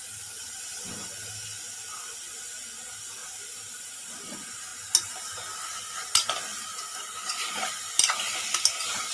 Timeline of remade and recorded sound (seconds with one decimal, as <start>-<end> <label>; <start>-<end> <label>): 0.0-9.1 recorded